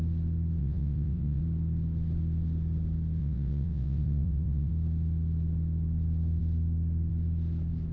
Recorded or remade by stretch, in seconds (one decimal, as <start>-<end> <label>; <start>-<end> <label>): 0.0-0.6 recorded; 0.6-1.4 remade; 1.4-3.2 recorded; 3.2-4.7 remade; 4.7-7.9 recorded